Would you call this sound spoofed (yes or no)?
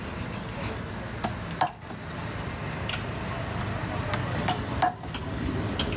no